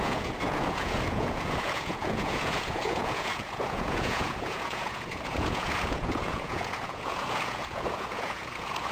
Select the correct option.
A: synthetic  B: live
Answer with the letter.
A